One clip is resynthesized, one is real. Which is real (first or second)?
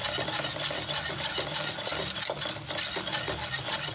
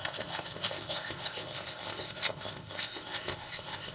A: first